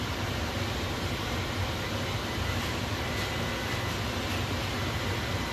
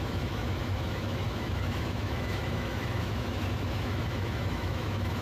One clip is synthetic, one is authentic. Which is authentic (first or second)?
first